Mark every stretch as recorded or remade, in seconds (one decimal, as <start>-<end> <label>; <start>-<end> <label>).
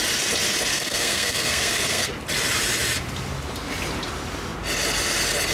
0.0-0.7 recorded; 0.7-2.1 remade; 2.1-5.5 recorded